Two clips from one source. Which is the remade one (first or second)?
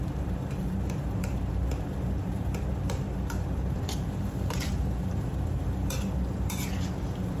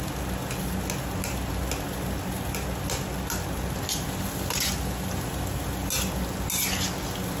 first